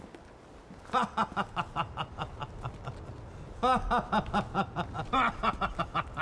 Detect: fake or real real